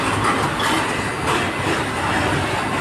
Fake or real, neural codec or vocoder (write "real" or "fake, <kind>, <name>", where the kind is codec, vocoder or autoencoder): real